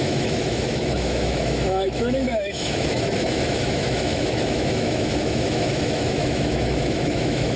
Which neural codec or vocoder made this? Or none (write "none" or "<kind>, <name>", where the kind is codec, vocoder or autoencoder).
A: autoencoder, DAC-VAE